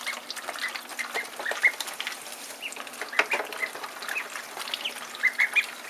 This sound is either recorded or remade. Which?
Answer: recorded